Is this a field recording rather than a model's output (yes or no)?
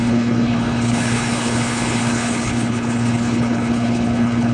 no